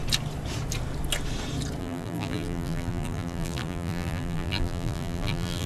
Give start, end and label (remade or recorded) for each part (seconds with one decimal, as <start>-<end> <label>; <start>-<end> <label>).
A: 0.0-1.8 recorded; 1.8-5.7 remade